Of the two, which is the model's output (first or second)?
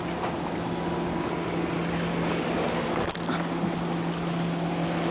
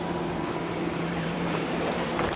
second